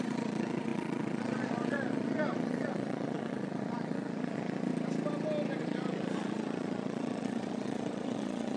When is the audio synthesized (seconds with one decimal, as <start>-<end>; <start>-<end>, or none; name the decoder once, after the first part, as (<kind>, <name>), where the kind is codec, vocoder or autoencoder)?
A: 0.0-4.7 (vocoder, Vocos); 5.6-8.6